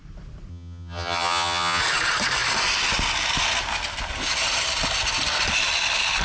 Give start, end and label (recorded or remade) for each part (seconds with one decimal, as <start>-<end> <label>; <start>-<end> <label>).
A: 0.0-0.5 recorded; 0.5-1.8 remade; 1.8-6.2 recorded